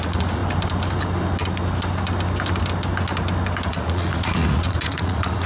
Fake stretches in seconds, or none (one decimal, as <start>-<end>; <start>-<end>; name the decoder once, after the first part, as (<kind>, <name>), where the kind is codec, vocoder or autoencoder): 0.0-0.4 (vocoder, Vocos); 3.7-5.5

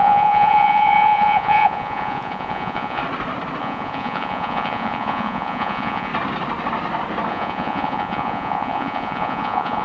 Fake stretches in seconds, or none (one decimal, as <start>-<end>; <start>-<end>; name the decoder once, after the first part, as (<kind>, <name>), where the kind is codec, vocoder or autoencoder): 0.0-3.0 (vocoder, Vocos); 3.6-6.1; 7.3-9.8

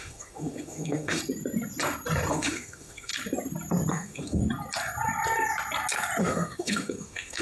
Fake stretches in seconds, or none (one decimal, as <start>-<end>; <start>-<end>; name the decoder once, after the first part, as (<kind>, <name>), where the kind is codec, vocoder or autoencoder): 0.0-1.2 (autoencoder, DAC-VAE); 2.3-3.1; 3.9-4.4; 6.2-7.4

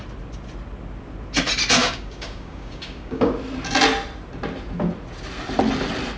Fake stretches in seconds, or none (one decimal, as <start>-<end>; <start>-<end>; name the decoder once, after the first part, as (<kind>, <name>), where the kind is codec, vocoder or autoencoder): 1.8-3.3 (codec, DAC)

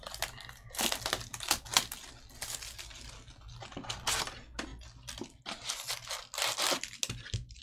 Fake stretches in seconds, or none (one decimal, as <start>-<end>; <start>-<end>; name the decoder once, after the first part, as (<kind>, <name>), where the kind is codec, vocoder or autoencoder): none

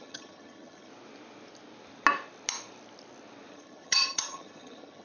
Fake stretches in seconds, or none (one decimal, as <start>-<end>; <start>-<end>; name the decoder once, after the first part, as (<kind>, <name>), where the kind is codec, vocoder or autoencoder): 0.0-0.9 (vocoder, HiFi-GAN); 3.5-5.0

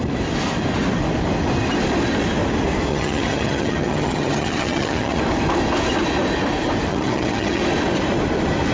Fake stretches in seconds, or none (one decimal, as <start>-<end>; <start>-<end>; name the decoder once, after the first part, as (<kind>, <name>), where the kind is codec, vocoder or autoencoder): 2.9-5.2 (vocoder, HiFi-GAN); 6.9-7.6

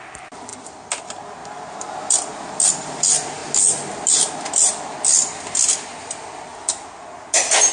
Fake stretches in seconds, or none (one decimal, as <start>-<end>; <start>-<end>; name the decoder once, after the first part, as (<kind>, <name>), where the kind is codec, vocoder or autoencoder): none